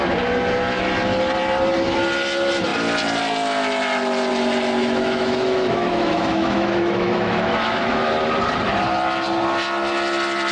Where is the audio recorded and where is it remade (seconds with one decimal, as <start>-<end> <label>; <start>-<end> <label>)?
0.0-4.8 recorded; 4.8-8.1 remade; 8.1-10.5 recorded